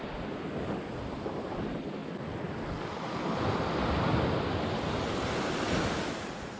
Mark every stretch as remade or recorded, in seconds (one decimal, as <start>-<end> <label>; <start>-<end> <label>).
0.0-6.6 recorded